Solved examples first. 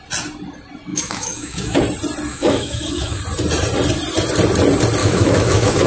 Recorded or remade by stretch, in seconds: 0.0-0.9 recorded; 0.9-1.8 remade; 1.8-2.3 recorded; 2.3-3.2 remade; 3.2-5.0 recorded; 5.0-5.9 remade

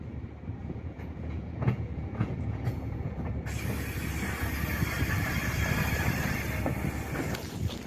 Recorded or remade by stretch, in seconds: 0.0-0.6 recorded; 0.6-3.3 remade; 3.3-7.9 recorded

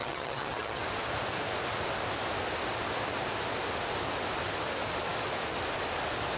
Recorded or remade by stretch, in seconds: 0.0-0.8 remade; 0.8-6.4 recorded

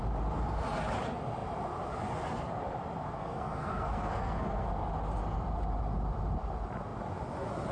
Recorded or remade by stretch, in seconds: 0.0-3.2 recorded; 3.2-4.7 remade; 4.7-7.7 recorded

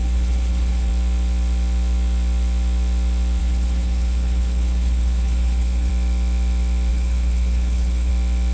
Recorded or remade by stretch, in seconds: 0.0-0.9 remade; 0.9-3.4 recorded; 3.4-5.9 remade; 5.9-6.9 recorded; 6.9-8.1 remade; 8.1-8.5 recorded